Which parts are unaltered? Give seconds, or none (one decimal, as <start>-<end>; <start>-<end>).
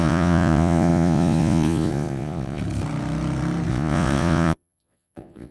2.6-3.7